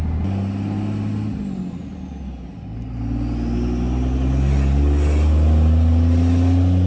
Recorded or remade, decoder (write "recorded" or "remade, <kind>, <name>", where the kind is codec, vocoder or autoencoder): recorded